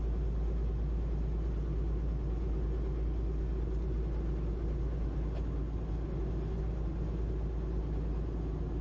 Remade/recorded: recorded